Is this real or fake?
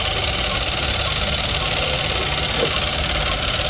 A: real